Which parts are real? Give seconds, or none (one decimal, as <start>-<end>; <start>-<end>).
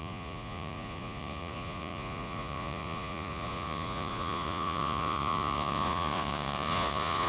none